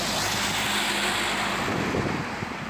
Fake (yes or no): no